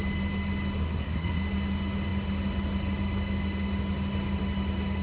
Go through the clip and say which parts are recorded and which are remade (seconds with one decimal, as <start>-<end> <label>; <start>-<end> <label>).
0.0-0.8 recorded; 0.8-1.4 remade; 1.4-5.0 recorded